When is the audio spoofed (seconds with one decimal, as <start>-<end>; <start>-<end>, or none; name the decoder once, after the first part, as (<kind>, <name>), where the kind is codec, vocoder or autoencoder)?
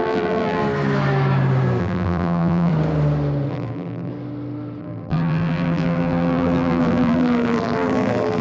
0.0-0.6 (vocoder, BigVGAN v2); 1.8-2.7; 3.5-4.1; 4.8-8.4